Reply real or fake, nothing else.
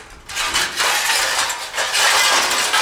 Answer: real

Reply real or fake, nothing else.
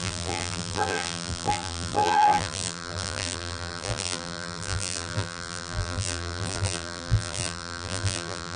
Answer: fake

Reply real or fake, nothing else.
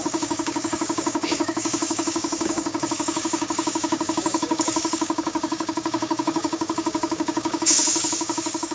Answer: fake